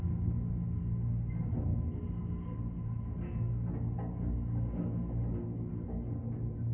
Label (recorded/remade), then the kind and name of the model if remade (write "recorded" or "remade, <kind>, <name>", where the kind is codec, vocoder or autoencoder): recorded